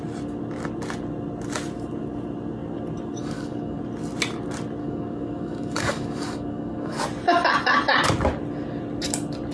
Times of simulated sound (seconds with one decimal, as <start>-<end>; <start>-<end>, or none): 3.2-3.8; 4.8-7.0

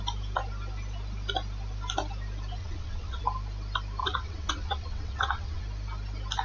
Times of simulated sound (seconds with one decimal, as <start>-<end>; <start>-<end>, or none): 2.6-3.2; 4.0-5.6

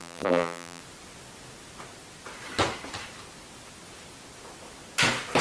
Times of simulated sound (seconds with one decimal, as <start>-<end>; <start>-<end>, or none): 0.0-0.8